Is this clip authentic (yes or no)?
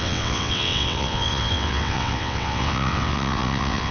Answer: no